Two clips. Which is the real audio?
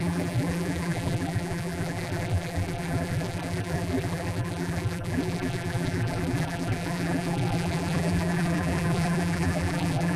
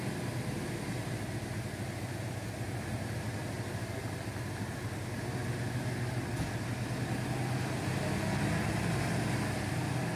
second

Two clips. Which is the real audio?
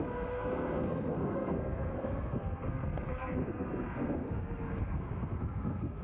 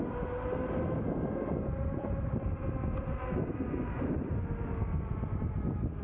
second